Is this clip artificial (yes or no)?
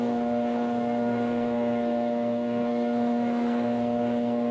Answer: yes